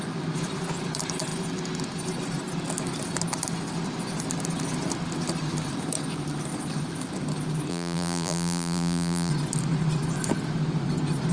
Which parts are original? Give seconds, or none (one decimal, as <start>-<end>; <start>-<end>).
0.0-7.7; 9.3-11.3